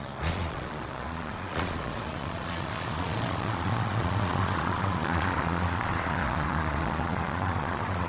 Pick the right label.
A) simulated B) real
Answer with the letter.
A